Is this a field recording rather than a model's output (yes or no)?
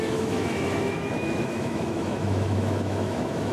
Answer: no